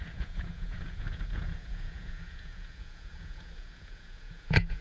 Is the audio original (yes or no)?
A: no